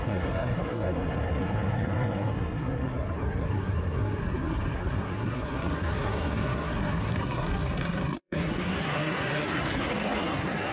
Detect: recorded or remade remade